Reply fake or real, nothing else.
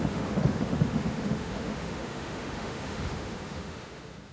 fake